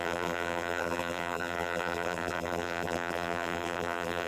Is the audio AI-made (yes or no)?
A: yes